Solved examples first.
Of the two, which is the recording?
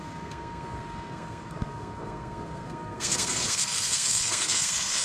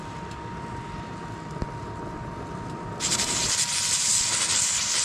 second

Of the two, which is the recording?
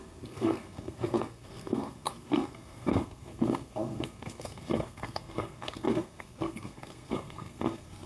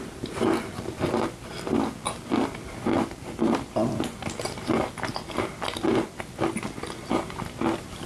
second